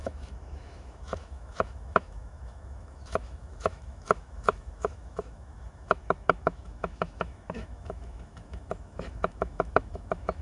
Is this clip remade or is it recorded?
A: remade